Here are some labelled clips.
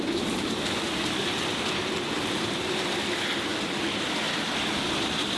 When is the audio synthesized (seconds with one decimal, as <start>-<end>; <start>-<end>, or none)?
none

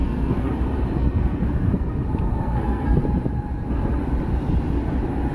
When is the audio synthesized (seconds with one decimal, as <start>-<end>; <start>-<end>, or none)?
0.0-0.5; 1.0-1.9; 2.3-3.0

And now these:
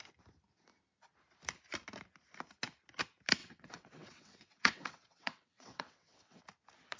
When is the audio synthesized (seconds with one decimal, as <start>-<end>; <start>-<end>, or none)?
3.4-6.4

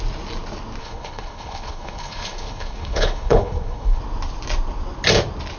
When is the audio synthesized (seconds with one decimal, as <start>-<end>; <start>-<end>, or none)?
0.8-4.0